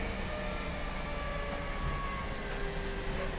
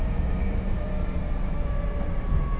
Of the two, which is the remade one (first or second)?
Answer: second